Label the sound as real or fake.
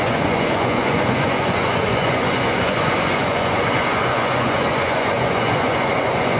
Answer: fake